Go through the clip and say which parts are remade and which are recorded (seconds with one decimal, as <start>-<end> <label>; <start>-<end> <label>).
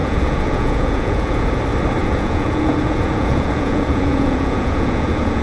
0.0-1.6 remade; 1.6-2.0 recorded; 2.0-5.4 remade